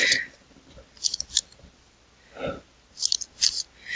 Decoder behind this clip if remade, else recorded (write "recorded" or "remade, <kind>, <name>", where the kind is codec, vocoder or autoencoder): recorded